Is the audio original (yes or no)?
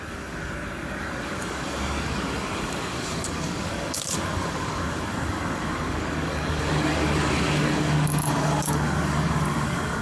no